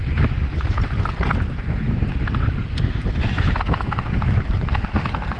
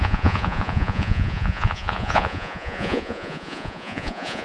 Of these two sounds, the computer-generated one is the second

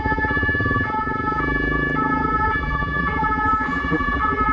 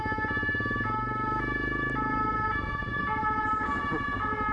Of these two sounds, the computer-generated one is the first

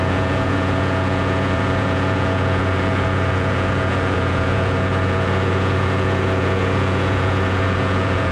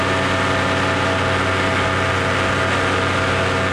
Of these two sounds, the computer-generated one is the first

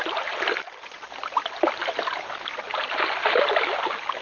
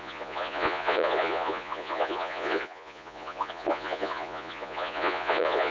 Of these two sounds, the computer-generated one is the second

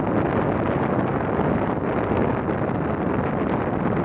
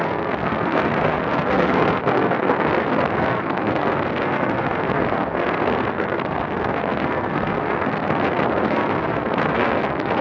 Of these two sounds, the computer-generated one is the second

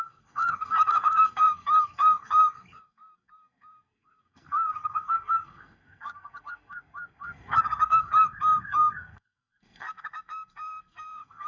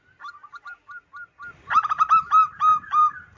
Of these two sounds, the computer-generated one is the first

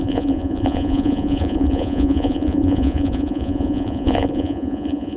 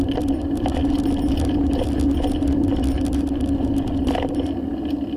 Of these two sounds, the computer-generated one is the first